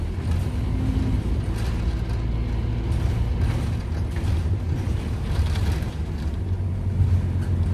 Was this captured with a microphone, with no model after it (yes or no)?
yes